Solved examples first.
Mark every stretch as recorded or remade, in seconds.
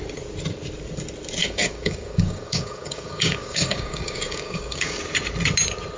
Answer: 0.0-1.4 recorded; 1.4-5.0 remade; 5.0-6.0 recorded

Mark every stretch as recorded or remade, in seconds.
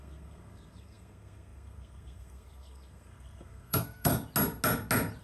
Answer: 0.0-4.1 remade; 4.1-5.2 recorded